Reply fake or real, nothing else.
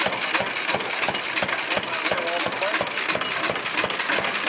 real